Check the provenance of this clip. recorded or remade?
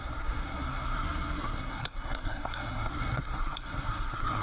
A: remade